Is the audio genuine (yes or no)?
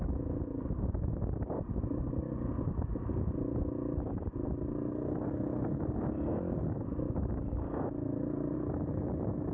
yes